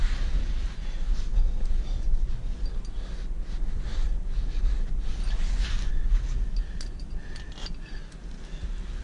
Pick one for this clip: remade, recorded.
recorded